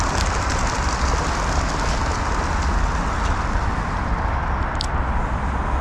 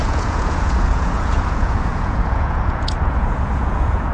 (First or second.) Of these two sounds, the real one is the first